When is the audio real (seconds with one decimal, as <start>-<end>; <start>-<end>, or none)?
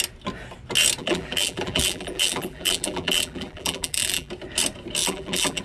0.0-1.0; 4.3-5.0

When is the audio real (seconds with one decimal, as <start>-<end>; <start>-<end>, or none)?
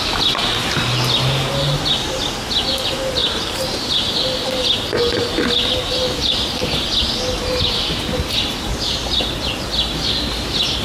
0.0-3.2; 4.1-10.8